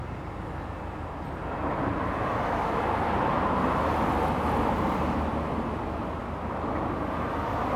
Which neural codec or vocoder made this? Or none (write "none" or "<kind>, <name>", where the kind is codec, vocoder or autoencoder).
none